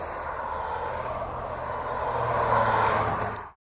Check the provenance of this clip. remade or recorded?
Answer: recorded